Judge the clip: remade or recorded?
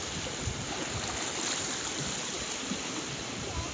recorded